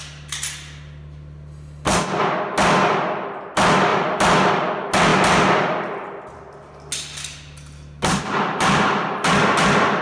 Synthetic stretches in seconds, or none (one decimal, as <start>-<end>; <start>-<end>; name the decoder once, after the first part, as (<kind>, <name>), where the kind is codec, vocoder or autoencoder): none